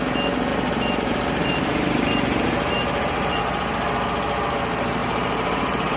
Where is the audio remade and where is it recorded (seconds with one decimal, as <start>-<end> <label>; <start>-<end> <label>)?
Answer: 0.0-0.5 recorded; 0.5-3.4 remade; 3.4-5.0 recorded; 5.0-6.0 remade